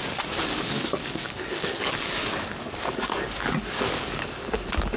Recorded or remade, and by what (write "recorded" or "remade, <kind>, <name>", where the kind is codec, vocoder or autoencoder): remade, codec, DAC